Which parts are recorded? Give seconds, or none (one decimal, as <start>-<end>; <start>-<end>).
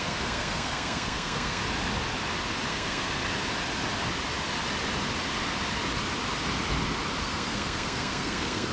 1.6-2.7; 3.2-7.2